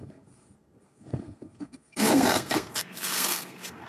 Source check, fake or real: fake